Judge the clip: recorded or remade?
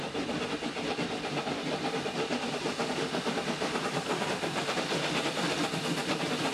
recorded